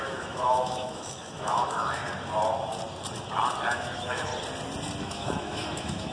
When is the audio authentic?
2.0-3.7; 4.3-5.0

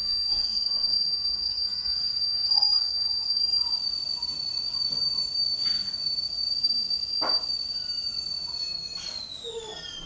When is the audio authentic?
3.4-10.1

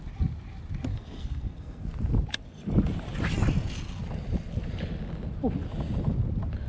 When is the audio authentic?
0.0-0.9; 1.8-6.7

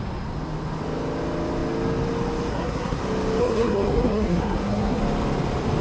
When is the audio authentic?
0.0-2.5; 3.0-3.4; 5.0-5.8

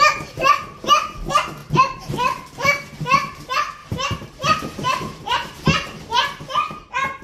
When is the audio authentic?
0.0-1.6; 2.1-3.8; 6.0-7.2

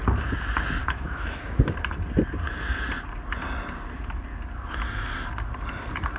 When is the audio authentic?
0.0-0.8; 1.6-6.2

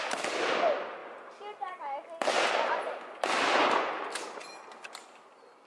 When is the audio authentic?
0.0-5.7